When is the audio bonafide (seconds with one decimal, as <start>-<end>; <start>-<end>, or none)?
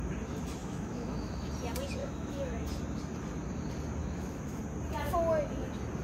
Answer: 0.0-0.6; 1.5-2.0; 2.6-4.0; 4.6-6.0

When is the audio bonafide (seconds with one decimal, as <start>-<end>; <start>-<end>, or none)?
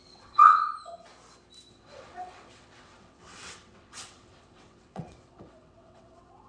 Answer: 0.6-1.7